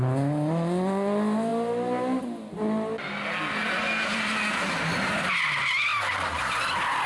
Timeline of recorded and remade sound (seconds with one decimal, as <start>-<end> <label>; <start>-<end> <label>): 0.0-7.1 recorded

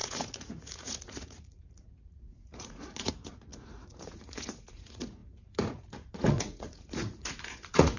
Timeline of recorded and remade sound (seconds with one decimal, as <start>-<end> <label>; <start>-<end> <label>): 0.0-8.0 remade

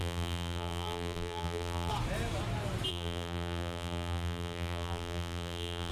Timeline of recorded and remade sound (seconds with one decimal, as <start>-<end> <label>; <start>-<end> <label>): 0.0-1.9 remade; 1.9-2.9 recorded; 2.9-5.9 remade

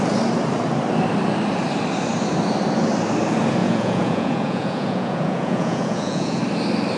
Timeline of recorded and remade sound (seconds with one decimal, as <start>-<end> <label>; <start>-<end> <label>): 0.0-3.6 recorded; 3.6-6.4 remade; 6.4-7.0 recorded

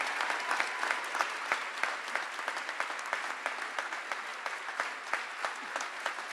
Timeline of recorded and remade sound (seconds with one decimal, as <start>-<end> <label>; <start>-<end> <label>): 0.0-6.3 recorded

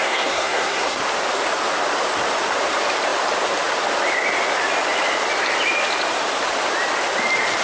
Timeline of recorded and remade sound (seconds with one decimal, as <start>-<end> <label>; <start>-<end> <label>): 0.0-1.0 remade; 1.0-7.6 recorded